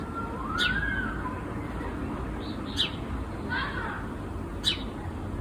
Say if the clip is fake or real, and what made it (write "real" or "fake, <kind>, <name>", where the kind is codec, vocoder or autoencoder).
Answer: real